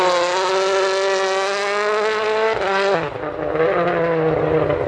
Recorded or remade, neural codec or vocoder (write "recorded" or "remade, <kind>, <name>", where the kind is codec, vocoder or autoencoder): recorded